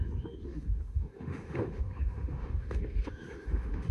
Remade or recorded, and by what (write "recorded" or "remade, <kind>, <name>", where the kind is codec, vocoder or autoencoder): remade, autoencoder, DAC-VAE